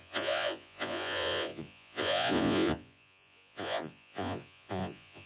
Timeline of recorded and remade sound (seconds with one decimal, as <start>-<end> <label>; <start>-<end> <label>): 0.0-5.3 remade